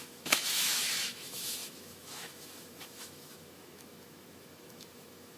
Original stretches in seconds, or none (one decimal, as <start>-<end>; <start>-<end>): none